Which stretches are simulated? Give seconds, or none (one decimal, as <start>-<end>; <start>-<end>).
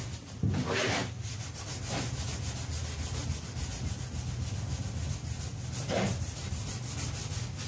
none